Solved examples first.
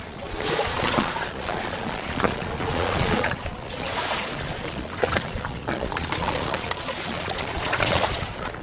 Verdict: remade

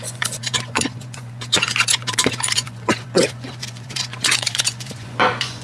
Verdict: remade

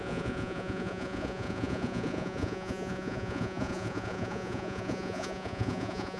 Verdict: remade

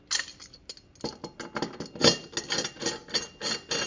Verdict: recorded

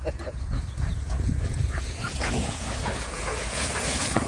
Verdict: remade